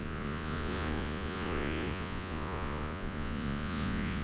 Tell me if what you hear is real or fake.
fake